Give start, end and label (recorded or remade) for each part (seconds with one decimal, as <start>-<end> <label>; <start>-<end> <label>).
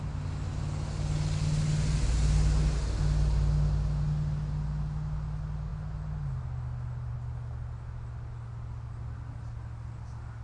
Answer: 0.0-10.4 recorded